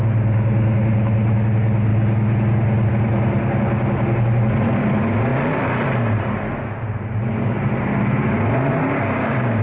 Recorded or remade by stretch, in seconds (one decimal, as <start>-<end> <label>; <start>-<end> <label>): 0.0-9.6 recorded